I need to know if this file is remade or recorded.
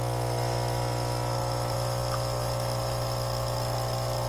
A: recorded